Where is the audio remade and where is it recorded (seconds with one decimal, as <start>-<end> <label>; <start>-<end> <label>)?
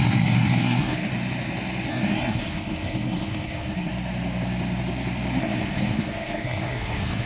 0.0-1.1 remade; 1.1-1.9 recorded; 1.9-3.9 remade; 3.9-5.4 recorded; 5.4-7.3 remade